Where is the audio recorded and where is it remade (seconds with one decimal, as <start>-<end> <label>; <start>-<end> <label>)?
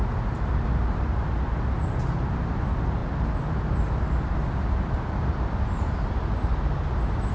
0.0-7.3 recorded